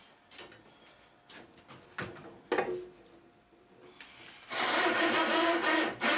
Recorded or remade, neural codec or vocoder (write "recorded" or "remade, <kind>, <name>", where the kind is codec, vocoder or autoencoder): recorded